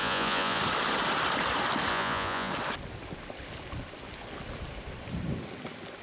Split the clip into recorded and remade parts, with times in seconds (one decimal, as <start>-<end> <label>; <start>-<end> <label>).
0.0-0.6 remade; 0.6-1.9 recorded; 1.9-2.5 remade; 2.5-6.0 recorded